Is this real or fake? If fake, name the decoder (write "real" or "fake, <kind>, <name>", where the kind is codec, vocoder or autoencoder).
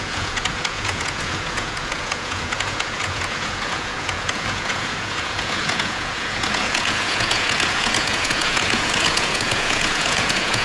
fake, vocoder, Vocos